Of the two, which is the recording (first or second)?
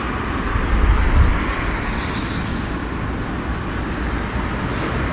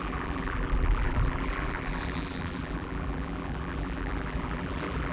first